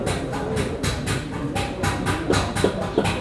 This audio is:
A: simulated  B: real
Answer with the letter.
B